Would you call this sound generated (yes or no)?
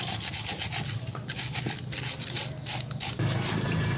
no